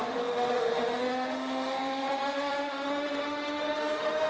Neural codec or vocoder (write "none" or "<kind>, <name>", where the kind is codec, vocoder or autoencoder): autoencoder, DAC-VAE